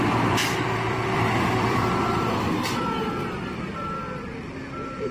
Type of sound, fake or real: fake